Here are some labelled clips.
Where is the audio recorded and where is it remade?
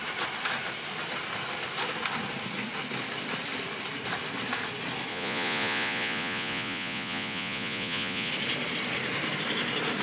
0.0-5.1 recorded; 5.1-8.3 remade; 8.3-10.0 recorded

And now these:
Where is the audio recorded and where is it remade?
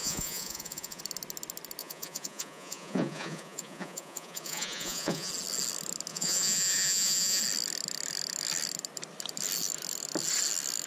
0.0-1.0 remade; 1.0-1.8 recorded; 1.8-5.3 remade; 5.3-6.1 recorded; 6.1-7.4 remade; 7.4-10.9 recorded